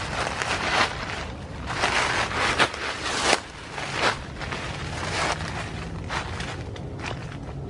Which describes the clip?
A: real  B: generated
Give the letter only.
A